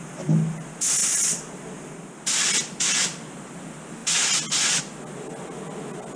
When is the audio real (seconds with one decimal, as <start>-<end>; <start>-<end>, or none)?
0.0-6.2